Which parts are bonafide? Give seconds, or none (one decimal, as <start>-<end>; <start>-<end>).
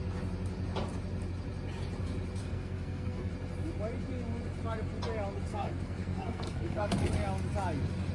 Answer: 0.0-2.4; 3.3-5.5; 6.9-8.1